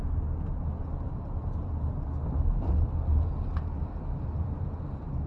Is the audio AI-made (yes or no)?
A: no